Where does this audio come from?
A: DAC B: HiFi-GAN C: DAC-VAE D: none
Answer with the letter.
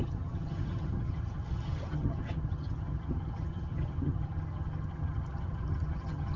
B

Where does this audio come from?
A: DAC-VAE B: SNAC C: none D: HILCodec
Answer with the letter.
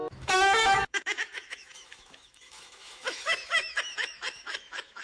A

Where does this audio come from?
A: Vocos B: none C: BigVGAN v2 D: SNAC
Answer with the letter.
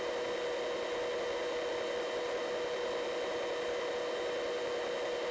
B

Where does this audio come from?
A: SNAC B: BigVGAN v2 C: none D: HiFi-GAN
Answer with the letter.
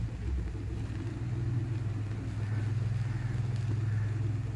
C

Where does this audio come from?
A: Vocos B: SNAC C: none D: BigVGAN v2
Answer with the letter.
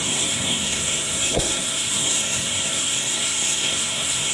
B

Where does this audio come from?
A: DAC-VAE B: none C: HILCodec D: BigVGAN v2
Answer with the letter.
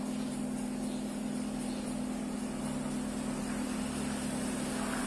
B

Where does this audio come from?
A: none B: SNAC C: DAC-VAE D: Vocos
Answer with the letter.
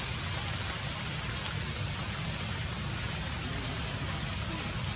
A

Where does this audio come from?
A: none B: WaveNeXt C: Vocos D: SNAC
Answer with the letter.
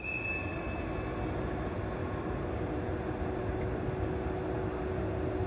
A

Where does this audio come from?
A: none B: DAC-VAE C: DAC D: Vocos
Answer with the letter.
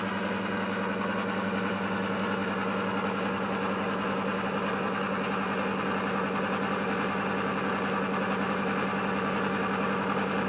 A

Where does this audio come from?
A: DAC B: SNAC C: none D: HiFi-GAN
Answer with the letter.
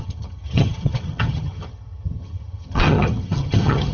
D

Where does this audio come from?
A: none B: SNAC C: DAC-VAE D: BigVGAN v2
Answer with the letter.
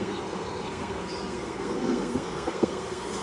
B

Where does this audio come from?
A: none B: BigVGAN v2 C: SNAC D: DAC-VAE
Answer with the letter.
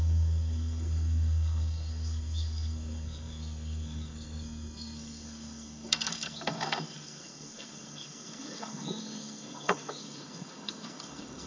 C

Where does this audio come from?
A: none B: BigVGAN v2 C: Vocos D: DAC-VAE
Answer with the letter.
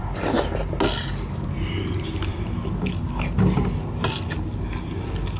A